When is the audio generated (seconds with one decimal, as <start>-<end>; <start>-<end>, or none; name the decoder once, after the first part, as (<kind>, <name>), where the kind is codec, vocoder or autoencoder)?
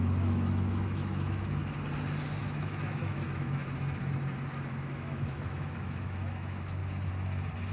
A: 0.0-1.6 (autoencoder, DAC-VAE); 2.4-3.6; 4.7-6.8